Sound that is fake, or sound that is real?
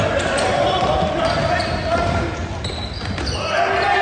real